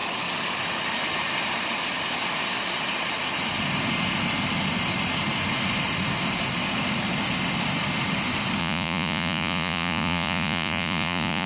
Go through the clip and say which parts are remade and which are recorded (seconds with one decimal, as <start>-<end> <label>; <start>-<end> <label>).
0.0-8.6 recorded; 8.6-11.5 remade